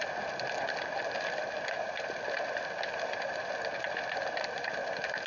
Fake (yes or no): yes